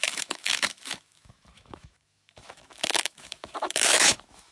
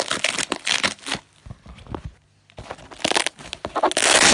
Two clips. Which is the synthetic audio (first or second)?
first